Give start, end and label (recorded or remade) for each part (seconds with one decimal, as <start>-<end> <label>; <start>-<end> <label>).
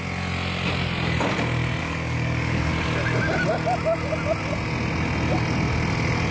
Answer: 0.0-1.8 recorded; 1.8-2.7 remade; 2.7-6.3 recorded